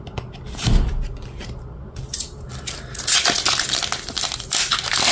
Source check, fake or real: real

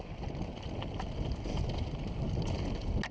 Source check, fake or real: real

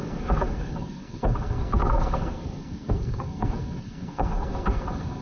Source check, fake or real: fake